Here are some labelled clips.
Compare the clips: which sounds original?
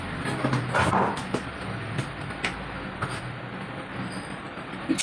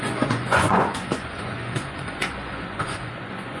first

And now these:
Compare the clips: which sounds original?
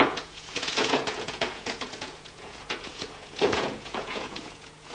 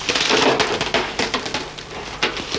second